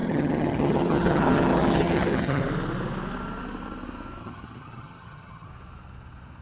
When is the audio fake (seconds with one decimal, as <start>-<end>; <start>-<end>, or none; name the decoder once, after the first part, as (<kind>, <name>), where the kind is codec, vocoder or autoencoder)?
0.0-2.4 (vocoder, HiFi-GAN); 4.2-5.5